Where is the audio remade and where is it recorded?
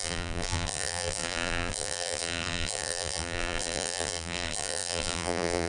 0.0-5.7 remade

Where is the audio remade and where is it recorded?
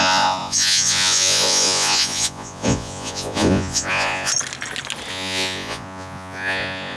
0.0-4.3 remade; 4.3-5.1 recorded; 5.1-7.0 remade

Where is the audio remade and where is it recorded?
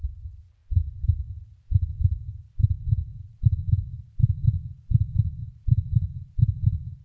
0.0-3.1 recorded; 3.1-4.6 remade; 4.6-5.4 recorded; 5.4-6.3 remade; 6.3-7.0 recorded